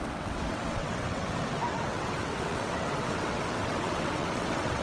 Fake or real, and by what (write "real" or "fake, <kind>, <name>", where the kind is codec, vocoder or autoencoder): fake, vocoder, WaveNeXt